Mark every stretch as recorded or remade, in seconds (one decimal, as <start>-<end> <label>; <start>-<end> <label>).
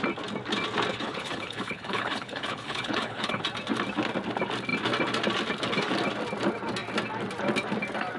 0.0-0.9 recorded; 0.9-3.4 remade; 3.4-8.2 recorded